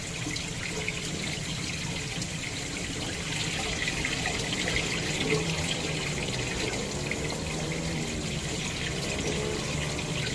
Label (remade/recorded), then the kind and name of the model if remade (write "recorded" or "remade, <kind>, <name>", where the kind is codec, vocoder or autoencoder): recorded